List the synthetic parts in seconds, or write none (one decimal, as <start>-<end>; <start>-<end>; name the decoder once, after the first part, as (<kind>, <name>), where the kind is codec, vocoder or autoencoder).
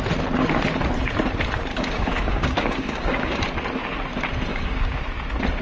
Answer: 1.7-3.4 (codec, DAC); 4.5-5.0